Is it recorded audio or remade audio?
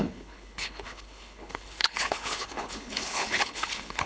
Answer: remade